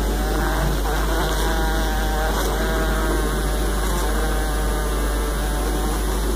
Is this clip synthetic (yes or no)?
no